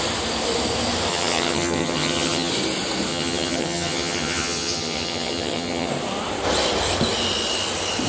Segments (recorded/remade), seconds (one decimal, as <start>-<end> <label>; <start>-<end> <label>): 0.0-1.1 recorded; 1.1-2.5 remade; 2.5-3.1 recorded; 3.1-5.9 remade; 5.9-8.1 recorded